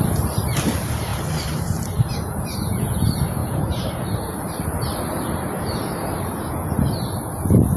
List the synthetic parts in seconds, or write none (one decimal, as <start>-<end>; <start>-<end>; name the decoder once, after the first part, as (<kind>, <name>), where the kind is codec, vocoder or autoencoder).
1.1-2.8 (vocoder, BigVGAN v2); 3.4-4.8